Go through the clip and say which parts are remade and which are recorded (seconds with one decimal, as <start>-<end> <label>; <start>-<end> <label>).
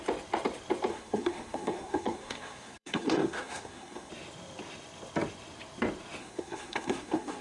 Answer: 0.0-0.9 recorded; 0.9-4.1 remade; 4.1-6.2 recorded; 6.2-7.4 remade